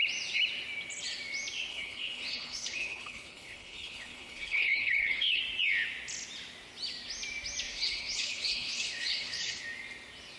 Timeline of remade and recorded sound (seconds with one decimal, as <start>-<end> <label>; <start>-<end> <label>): 0.0-1.7 recorded; 1.7-5.4 remade; 5.4-7.7 recorded; 7.7-9.6 remade; 9.6-10.4 recorded